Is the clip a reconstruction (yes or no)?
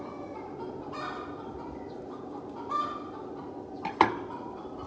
no